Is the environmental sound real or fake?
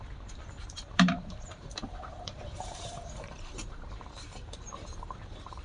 fake